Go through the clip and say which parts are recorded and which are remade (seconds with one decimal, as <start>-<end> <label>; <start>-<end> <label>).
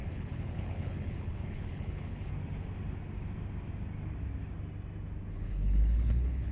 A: 0.0-2.3 remade; 2.3-5.3 recorded; 5.3-6.5 remade